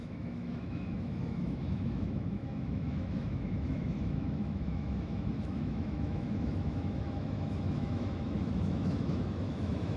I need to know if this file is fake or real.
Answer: fake